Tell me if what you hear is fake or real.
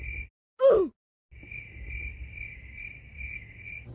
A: real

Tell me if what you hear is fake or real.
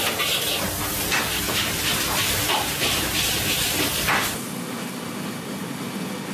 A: real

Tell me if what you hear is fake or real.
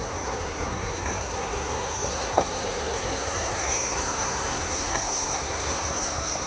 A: fake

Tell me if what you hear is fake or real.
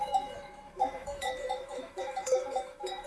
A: fake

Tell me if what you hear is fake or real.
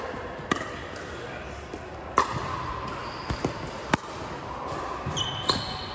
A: real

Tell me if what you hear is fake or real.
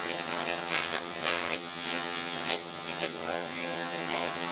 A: fake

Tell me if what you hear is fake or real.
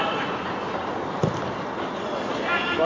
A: real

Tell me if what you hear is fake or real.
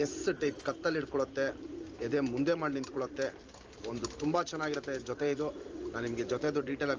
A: fake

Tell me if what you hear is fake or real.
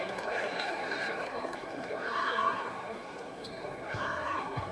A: fake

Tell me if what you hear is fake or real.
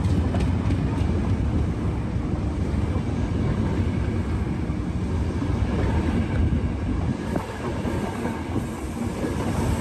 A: real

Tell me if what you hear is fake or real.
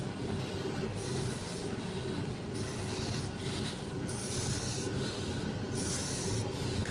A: real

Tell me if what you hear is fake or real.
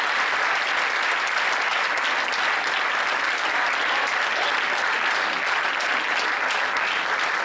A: real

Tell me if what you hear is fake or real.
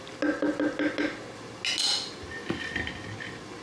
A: real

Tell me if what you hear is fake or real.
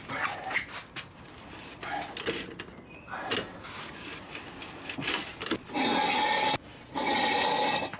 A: real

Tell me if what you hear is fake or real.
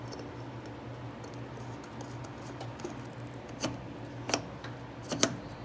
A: real